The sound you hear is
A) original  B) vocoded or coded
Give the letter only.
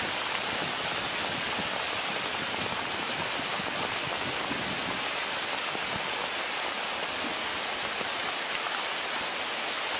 A